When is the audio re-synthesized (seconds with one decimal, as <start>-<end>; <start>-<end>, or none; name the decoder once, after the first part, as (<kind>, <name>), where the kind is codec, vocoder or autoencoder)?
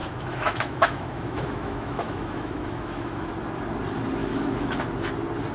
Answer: 0.0-3.3 (autoencoder, DAC-VAE); 4.2-4.7